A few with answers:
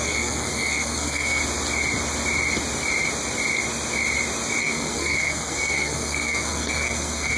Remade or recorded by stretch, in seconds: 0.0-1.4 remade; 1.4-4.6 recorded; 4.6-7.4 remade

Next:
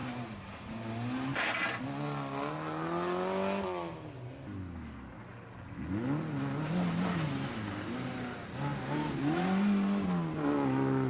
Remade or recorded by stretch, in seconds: 0.0-11.1 recorded

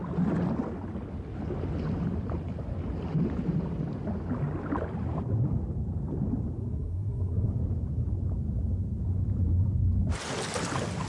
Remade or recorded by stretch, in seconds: 0.0-6.6 recorded; 6.6-7.5 remade; 7.5-11.1 recorded

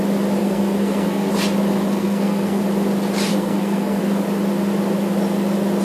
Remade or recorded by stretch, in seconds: 0.0-0.4 recorded; 0.4-1.3 remade; 1.3-1.9 recorded; 1.9-2.6 remade; 2.6-3.3 recorded; 3.3-4.0 remade; 4.0-5.8 recorded

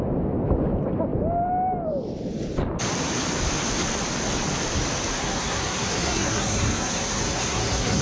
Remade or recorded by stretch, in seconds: 0.0-5.1 recorded; 5.1-8.0 remade

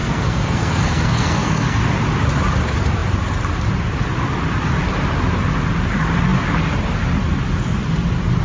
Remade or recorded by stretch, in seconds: 0.0-1.8 remade; 1.8-8.4 recorded